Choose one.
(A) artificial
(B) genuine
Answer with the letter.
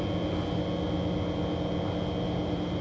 B